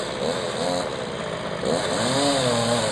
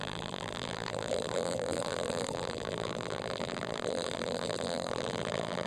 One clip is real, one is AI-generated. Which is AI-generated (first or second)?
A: second